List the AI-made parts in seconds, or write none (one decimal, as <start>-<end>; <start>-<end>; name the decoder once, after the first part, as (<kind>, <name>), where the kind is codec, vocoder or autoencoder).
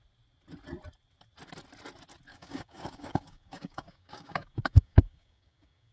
2.3-5.9 (codec, DAC)